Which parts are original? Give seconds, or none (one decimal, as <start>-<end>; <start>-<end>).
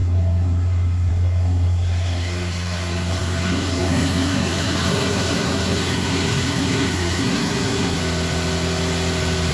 8.0-9.5